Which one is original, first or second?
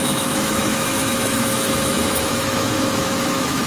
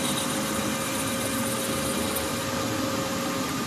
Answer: second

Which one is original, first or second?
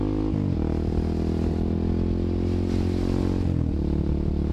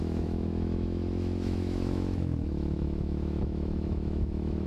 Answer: first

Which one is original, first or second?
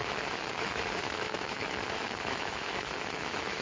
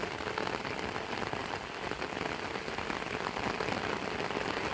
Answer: second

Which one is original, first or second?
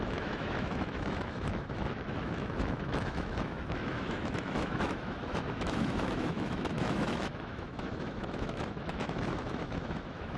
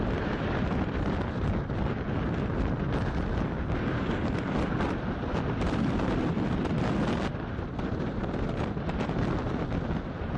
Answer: second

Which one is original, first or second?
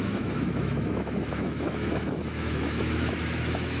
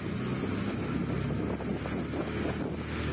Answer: second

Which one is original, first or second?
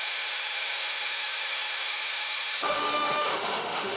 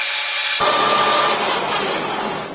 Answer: second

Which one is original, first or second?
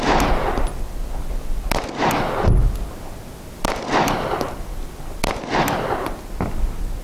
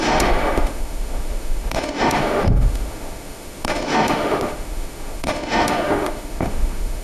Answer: first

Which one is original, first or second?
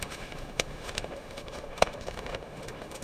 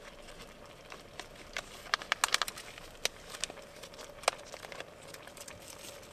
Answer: second